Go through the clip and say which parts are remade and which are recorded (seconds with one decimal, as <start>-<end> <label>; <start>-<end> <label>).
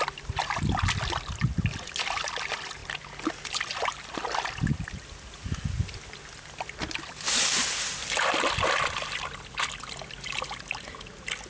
0.0-11.5 recorded